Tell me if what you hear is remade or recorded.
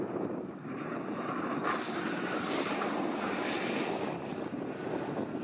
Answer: recorded